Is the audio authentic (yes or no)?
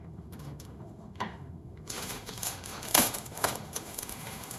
no